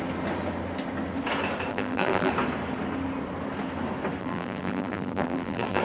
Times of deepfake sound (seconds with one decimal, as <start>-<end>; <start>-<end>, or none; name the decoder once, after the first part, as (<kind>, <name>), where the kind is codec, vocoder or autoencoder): 1.7-2.3 (vocoder, BigVGAN v2); 4.2-5.8